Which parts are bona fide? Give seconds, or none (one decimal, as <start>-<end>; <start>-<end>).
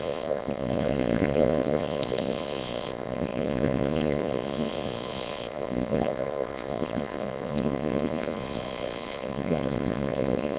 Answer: none